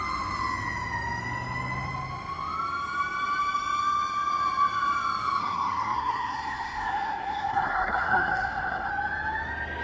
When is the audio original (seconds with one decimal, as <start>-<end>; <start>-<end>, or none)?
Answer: 0.0-5.4; 8.9-9.8